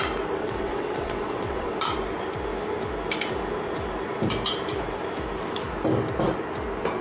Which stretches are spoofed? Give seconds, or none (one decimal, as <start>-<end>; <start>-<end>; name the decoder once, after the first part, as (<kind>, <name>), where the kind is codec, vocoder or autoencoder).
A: 0.4-1.8 (vocoder, WaveNeXt)